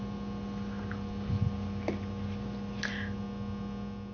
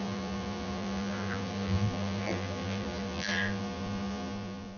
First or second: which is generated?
second